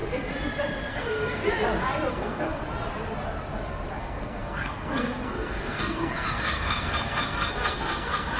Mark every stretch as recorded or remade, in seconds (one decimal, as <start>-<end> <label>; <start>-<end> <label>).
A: 0.0-0.9 recorded; 0.9-1.4 remade; 1.4-2.1 recorded; 2.1-2.6 remade; 2.6-4.0 recorded; 4.0-8.4 remade